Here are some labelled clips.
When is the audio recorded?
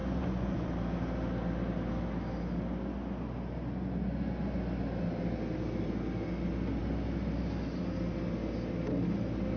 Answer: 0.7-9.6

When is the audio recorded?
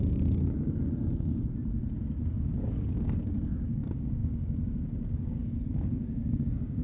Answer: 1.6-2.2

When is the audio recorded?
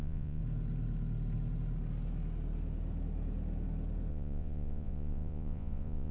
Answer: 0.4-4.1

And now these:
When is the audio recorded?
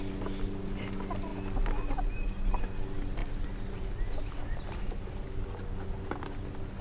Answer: 0.0-6.8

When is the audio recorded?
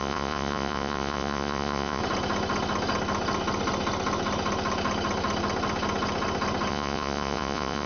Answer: 2.0-6.7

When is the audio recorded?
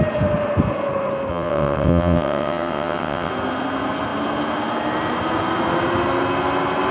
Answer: 0.0-1.3; 3.3-6.9